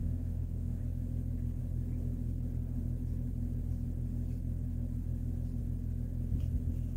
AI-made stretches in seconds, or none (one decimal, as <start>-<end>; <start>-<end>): 0.0-0.8